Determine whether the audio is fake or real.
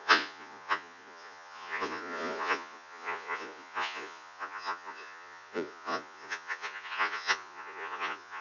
fake